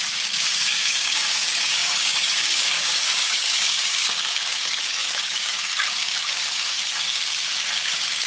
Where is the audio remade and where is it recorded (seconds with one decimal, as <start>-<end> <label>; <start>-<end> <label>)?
0.0-8.3 remade